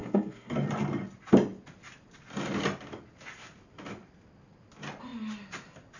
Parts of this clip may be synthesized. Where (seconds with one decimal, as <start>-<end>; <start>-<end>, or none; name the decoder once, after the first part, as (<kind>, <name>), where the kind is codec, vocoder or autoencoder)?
0.0-0.5 (codec, SNAC)